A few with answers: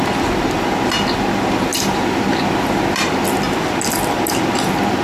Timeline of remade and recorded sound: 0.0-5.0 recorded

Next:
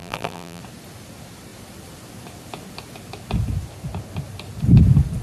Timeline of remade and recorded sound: 0.0-0.6 remade; 0.6-5.2 recorded

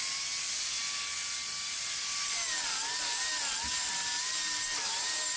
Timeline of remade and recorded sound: 0.0-5.4 recorded

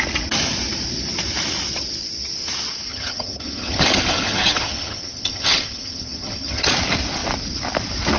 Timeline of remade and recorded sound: 0.0-2.9 recorded; 2.9-6.7 remade; 6.7-8.2 recorded

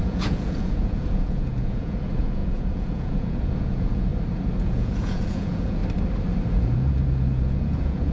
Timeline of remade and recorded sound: 0.0-4.1 remade; 4.1-4.6 recorded; 4.6-5.8 remade; 5.8-6.5 recorded; 6.5-8.1 remade

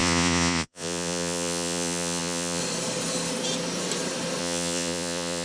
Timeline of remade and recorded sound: 0.0-2.6 remade; 2.6-4.4 recorded; 4.4-5.4 remade

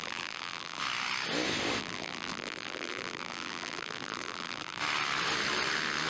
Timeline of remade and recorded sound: 0.0-0.8 remade; 0.8-1.8 recorded; 1.8-4.8 remade; 4.8-6.1 recorded